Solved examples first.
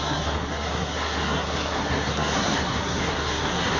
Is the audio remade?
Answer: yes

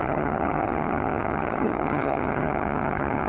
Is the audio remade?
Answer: yes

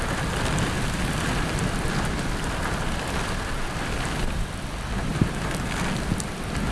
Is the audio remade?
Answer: no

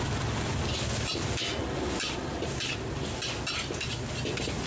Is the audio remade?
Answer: no